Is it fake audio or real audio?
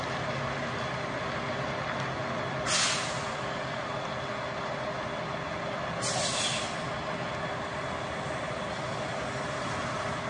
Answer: real